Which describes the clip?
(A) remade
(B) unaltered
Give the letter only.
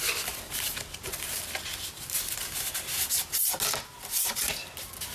B